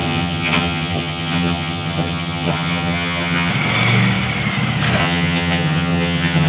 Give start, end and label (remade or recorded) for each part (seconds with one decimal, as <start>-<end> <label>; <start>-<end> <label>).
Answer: 0.0-3.5 remade; 3.5-5.0 recorded; 5.0-6.5 remade

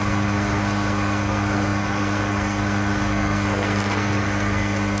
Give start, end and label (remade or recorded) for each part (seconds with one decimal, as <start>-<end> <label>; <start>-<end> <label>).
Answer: 0.0-5.0 remade

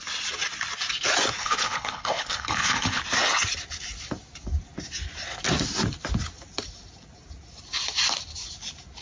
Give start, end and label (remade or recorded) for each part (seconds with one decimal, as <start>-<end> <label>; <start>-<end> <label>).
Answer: 0.0-1.4 recorded; 1.4-3.0 remade; 3.0-9.0 recorded

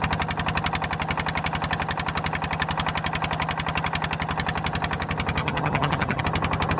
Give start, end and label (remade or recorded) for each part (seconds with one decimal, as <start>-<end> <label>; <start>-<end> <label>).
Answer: 0.0-5.4 recorded; 5.4-6.2 remade; 6.2-6.8 recorded

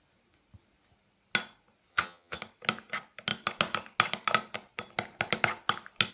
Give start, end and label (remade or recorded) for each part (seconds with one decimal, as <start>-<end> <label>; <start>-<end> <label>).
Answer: 0.0-1.9 recorded; 1.9-2.4 remade; 2.4-6.1 recorded

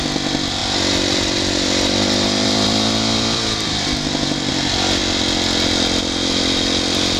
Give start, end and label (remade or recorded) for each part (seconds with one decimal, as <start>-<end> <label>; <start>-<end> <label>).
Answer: 0.0-0.6 recorded; 0.6-4.5 remade; 4.5-7.2 recorded